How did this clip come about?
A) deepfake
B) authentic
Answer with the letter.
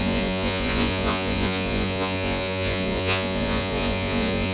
A